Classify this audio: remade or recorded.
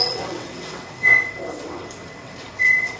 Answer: remade